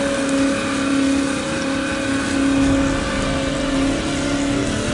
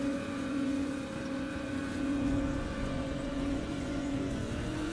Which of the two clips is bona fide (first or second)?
first